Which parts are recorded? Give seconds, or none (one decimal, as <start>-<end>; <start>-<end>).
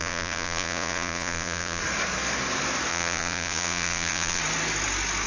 1.8-2.9; 4.4-5.3